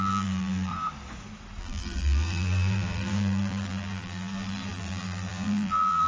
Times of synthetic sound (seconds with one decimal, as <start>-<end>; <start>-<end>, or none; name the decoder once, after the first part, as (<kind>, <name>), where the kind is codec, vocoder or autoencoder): 0.0-0.7 (vocoder, BigVGAN v2); 1.6-6.1